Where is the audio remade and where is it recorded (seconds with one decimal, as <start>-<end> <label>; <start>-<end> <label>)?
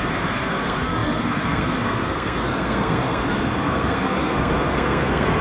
0.0-5.4 remade